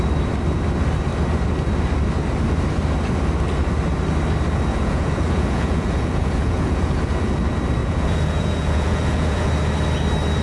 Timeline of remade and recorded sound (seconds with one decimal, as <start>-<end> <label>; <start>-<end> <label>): 0.0-4.7 recorded; 4.7-7.3 remade; 7.3-7.8 recorded; 7.8-9.5 remade; 9.5-10.4 recorded